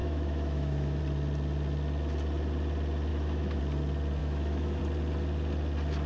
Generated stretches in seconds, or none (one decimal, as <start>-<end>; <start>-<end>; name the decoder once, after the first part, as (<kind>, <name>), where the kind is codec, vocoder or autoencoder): 0.0-1.0 (autoencoder, DAC-VAE); 3.1-3.6; 4.2-4.8